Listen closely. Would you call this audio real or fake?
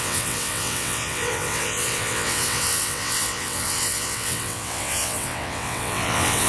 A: fake